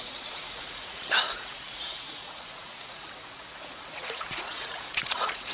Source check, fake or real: fake